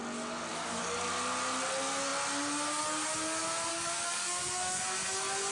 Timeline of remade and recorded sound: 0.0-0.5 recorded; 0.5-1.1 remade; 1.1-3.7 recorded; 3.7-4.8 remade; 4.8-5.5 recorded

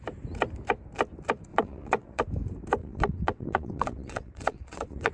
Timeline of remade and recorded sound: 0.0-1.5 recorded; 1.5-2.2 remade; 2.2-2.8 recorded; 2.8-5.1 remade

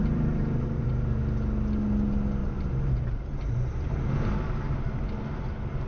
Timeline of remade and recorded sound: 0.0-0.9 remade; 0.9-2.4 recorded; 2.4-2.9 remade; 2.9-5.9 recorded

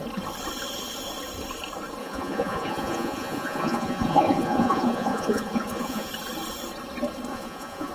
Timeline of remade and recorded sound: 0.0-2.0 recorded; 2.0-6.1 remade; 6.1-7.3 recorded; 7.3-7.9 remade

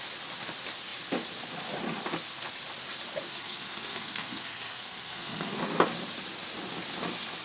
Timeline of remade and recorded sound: 0.0-3.3 recorded; 3.3-5.6 remade; 5.6-7.4 recorded